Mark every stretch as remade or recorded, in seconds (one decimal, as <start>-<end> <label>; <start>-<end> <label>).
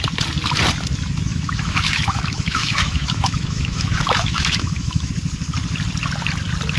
0.0-1.3 recorded; 1.3-5.1 remade; 5.1-6.8 recorded